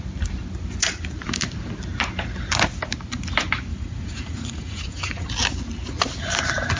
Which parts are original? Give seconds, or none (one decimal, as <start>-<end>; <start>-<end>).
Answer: 0.0-3.7; 5.3-6.8